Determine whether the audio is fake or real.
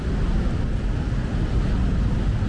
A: real